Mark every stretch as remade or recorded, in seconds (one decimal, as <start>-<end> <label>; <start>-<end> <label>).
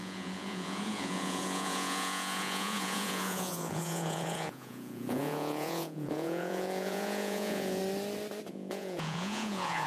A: 0.0-7.8 remade; 7.8-8.5 recorded; 8.5-9.9 remade